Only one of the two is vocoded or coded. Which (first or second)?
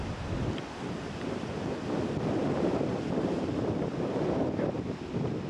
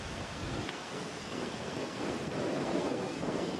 second